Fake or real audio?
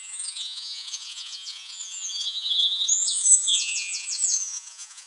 fake